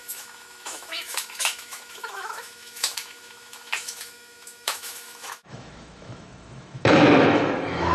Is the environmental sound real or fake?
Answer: fake